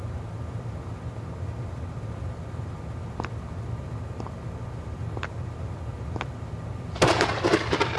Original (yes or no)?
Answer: yes